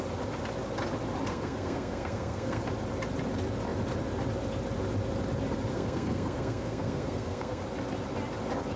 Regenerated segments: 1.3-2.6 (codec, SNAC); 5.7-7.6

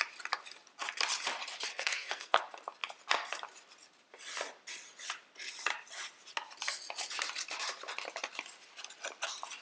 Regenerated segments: 1.7-2.4 (codec, SNAC)

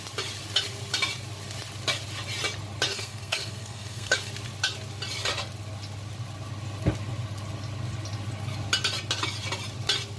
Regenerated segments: 2.9-4.3 (codec, SNAC)

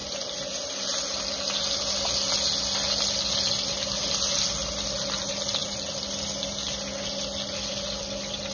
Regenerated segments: none

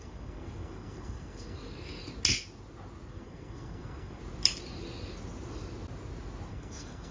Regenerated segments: 0.0-2.0 (codec, SNAC); 3.1-4.2; 6.5-7.1

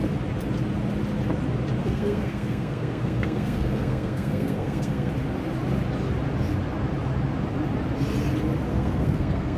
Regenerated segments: 1.8-5.1 (codec, SNAC); 8.7-9.6

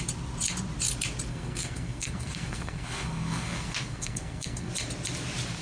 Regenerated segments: 1.3-4.7 (codec, SNAC)

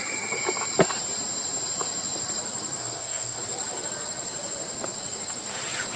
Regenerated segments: 2.8-3.4 (codec, SNAC)